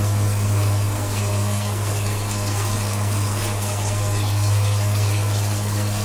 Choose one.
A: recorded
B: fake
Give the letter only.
B